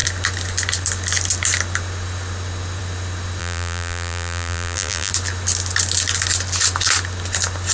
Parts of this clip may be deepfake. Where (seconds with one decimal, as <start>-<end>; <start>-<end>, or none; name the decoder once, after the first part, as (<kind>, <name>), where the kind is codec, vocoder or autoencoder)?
3.4-5.1 (vocoder, BigVGAN v2)